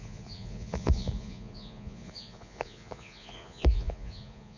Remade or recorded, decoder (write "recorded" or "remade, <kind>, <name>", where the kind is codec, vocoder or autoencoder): remade, vocoder, Vocos